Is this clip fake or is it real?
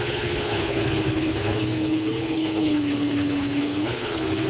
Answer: fake